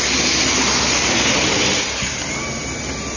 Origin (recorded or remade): recorded